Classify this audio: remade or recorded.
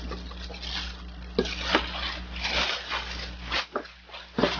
recorded